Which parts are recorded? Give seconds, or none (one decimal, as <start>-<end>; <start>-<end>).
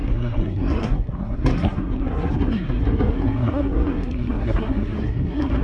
none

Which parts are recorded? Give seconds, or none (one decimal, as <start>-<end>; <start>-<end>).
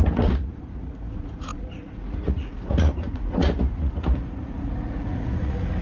none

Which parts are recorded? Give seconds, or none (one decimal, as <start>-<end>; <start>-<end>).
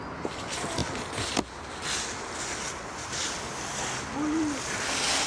0.8-4.0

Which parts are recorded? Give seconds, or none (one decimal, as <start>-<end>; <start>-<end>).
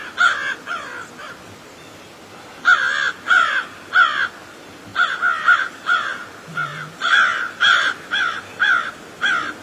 0.0-1.2; 3.1-4.9; 5.7-6.5; 8.9-9.6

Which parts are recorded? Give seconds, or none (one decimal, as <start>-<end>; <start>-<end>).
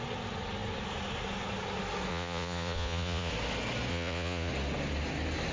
0.0-2.1; 3.3-3.9; 4.5-5.5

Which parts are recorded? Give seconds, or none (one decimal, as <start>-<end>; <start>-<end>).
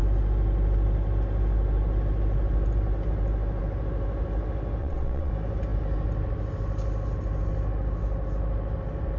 0.0-4.8; 5.3-9.2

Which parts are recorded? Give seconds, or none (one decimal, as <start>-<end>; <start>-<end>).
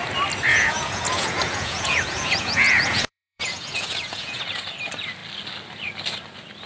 0.0-0.5; 4.4-6.7